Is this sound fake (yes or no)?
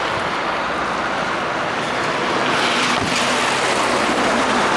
no